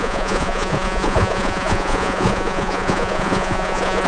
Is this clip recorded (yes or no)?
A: no